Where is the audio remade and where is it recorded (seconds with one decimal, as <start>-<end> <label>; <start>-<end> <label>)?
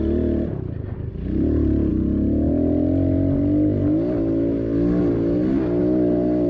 0.0-6.5 recorded